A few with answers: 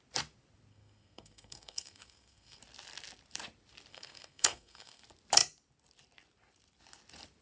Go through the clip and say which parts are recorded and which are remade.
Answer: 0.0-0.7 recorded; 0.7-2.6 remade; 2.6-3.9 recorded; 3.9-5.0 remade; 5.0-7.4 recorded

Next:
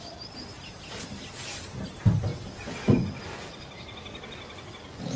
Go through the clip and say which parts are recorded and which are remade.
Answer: 0.0-5.2 recorded

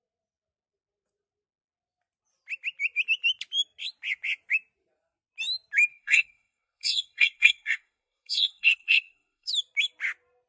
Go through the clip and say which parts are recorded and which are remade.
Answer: 0.0-5.9 recorded; 5.9-9.5 remade; 9.5-10.5 recorded

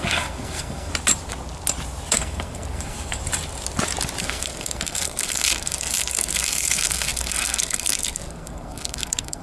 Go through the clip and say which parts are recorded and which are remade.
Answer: 0.0-0.9 remade; 0.9-2.1 recorded; 2.1-3.2 remade; 3.2-4.2 recorded; 4.2-9.4 remade

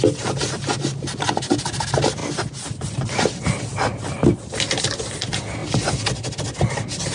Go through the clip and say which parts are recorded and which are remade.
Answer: 0.0-7.1 recorded

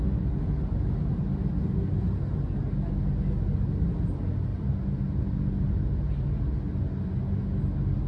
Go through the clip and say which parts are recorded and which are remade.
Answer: 0.0-8.1 recorded